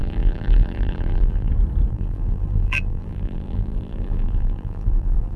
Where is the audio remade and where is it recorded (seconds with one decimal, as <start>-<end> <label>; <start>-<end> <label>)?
0.0-1.5 remade; 1.5-1.9 recorded; 1.9-5.4 remade